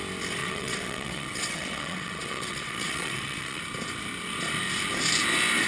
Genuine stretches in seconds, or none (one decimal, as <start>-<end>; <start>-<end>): 0.0-0.4; 3.6-5.7